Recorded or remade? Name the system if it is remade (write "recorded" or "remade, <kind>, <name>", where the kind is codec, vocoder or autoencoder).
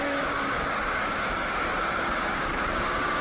remade, codec, DAC